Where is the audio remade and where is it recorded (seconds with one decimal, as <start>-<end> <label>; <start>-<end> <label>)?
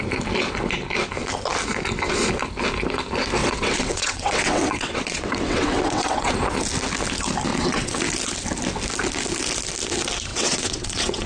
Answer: 0.0-3.4 recorded; 3.4-6.3 remade; 6.3-7.5 recorded; 7.5-8.0 remade; 8.0-10.3 recorded; 10.3-11.3 remade